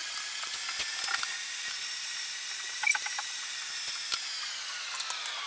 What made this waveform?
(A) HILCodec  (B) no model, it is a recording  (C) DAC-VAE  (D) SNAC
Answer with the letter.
B